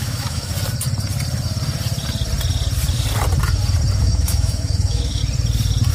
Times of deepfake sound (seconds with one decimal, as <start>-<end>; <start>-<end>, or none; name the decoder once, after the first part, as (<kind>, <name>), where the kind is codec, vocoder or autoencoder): 0.0-0.5 (autoencoder, DAC-VAE); 4.0-5.2